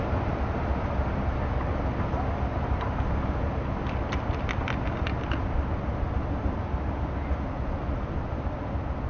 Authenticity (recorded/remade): recorded